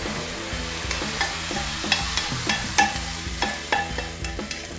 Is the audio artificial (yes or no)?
no